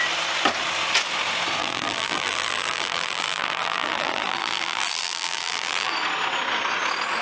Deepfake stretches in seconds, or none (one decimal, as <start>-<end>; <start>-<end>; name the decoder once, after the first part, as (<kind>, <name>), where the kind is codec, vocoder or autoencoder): 1.6-5.9 (vocoder, BigVGAN v2)